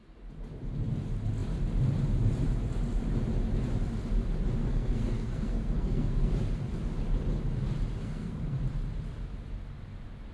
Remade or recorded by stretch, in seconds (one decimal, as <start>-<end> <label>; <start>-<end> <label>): 0.0-4.6 recorded; 4.6-6.3 remade; 6.3-8.0 recorded; 8.0-8.6 remade; 8.6-10.3 recorded